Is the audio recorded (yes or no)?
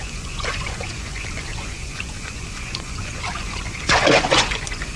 no